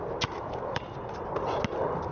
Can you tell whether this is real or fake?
real